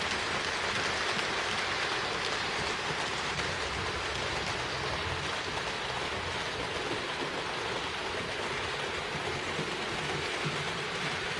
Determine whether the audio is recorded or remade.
recorded